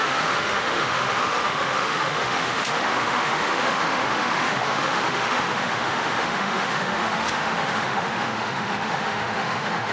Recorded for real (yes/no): no